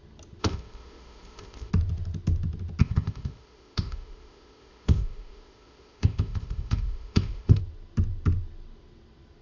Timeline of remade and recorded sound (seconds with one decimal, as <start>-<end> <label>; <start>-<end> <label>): 0.0-0.4 recorded; 0.4-1.7 remade; 1.7-2.8 recorded; 2.8-7.6 remade; 7.6-9.4 recorded